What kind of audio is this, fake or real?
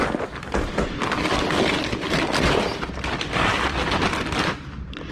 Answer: fake